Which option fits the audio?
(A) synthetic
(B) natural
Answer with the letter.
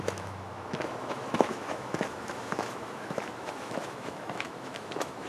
A